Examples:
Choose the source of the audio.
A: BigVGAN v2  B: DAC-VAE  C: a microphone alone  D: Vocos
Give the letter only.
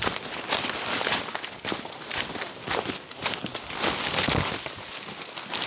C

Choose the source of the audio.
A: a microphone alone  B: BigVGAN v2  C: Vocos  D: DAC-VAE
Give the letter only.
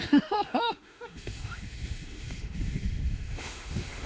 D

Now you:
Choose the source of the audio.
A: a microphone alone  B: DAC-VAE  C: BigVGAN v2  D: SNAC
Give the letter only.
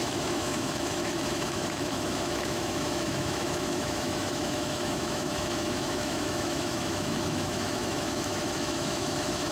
B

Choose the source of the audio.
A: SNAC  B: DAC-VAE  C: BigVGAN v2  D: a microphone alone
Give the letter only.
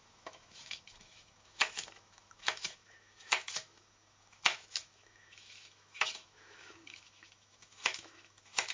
B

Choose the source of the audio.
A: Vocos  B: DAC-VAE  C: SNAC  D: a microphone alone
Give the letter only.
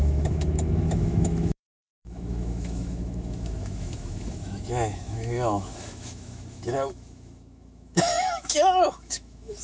B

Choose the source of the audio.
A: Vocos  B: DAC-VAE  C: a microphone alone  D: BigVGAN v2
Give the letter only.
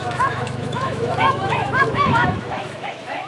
B